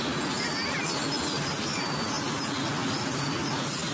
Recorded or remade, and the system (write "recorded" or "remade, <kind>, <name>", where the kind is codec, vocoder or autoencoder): recorded